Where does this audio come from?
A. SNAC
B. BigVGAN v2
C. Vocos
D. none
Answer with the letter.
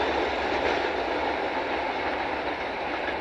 D